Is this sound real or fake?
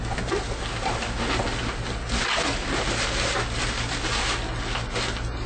real